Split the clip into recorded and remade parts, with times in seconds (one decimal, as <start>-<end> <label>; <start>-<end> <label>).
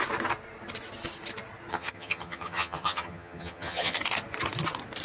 0.0-1.7 recorded; 1.7-4.0 remade; 4.0-5.0 recorded